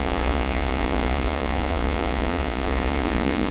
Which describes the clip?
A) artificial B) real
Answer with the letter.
A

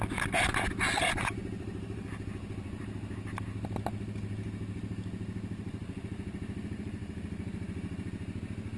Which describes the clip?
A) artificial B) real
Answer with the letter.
B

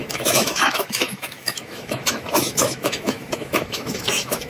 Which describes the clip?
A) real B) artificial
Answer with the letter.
B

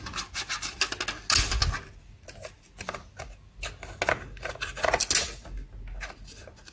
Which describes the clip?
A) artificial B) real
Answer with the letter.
B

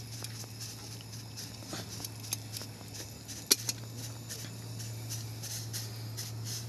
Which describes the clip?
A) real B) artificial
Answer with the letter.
A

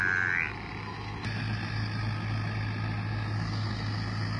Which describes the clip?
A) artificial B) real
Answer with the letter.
B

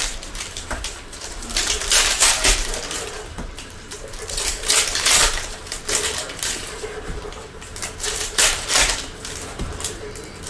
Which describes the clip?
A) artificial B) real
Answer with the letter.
A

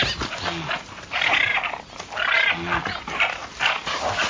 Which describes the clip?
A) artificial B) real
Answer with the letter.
B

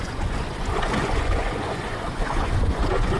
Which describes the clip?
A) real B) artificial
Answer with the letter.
B